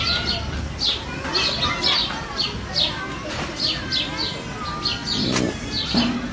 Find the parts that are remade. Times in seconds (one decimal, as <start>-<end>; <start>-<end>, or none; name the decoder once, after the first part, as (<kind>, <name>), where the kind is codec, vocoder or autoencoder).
none